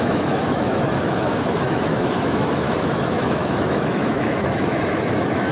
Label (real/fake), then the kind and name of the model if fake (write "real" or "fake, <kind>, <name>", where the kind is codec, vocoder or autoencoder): fake, autoencoder, DAC-VAE